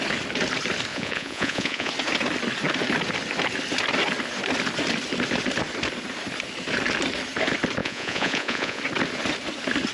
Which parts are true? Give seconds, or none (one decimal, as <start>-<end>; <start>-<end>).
0.0-0.9; 1.9-7.8; 8.8-9.9